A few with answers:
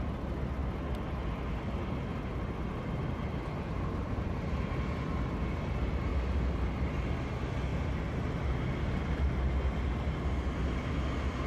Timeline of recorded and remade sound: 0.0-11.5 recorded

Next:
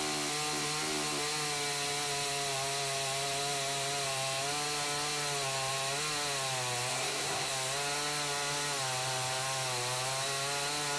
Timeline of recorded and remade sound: 0.0-6.9 recorded; 6.9-7.5 remade; 7.5-11.0 recorded

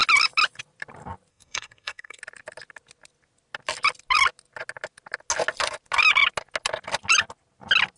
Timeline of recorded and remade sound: 0.0-1.3 recorded; 1.3-2.2 remade; 2.2-8.0 recorded

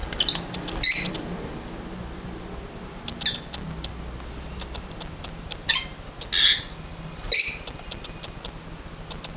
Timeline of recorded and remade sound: 0.0-9.4 recorded